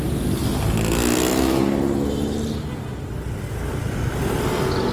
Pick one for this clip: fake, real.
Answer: real